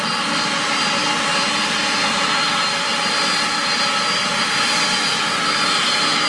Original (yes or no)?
yes